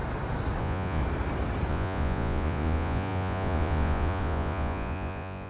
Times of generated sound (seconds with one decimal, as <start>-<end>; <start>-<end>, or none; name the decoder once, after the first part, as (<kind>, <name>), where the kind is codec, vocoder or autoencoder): 0.6-1.0 (vocoder, Vocos); 1.7-5.5